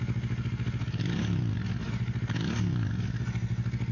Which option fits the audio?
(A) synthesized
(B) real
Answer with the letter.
B